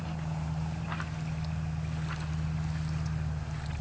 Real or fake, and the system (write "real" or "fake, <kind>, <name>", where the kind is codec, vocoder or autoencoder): real